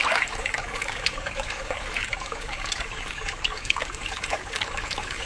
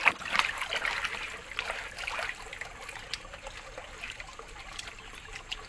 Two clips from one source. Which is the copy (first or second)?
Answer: first